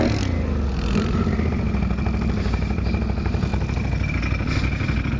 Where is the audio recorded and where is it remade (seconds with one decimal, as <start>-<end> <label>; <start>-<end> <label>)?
0.0-5.2 recorded